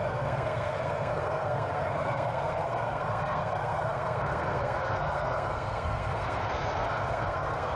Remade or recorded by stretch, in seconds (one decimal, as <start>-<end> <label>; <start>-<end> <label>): 0.0-7.8 remade